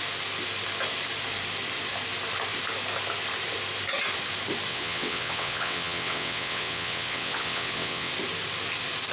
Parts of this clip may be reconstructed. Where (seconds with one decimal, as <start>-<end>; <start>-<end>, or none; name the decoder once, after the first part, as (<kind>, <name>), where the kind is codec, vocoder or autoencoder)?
4.7-8.1 (vocoder, WaveNeXt)